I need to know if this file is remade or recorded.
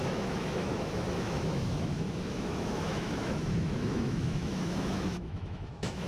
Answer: remade